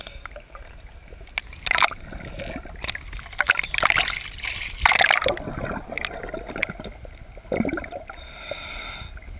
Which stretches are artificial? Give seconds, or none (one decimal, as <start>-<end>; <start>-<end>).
none